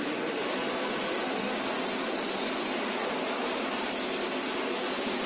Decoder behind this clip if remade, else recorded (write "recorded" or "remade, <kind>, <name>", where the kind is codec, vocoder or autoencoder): recorded